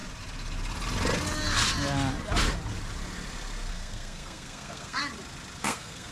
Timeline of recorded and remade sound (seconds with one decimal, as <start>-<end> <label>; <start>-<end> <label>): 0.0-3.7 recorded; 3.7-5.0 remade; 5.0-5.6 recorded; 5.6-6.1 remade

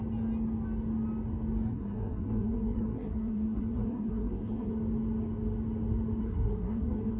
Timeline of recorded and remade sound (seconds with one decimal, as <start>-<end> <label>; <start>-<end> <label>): 0.0-1.7 recorded; 1.7-4.7 remade; 4.7-6.2 recorded; 6.2-7.2 remade

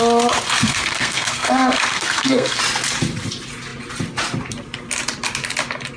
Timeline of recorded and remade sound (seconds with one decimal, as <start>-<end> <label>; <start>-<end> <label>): 0.0-0.6 recorded; 0.6-2.6 remade; 2.6-6.0 recorded

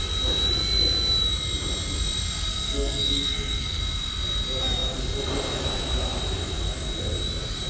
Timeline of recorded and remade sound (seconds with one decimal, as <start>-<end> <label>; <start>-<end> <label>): 0.0-2.5 recorded; 2.5-3.8 remade; 3.8-7.7 recorded

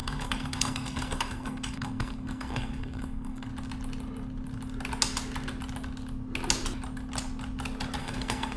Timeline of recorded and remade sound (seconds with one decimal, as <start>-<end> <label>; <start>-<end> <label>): 0.0-3.5 remade; 3.5-8.0 recorded; 8.0-8.6 remade